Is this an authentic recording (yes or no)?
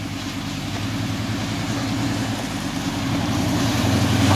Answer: no